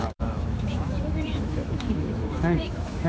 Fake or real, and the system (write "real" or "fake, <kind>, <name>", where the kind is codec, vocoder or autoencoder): fake, autoencoder, DAC-VAE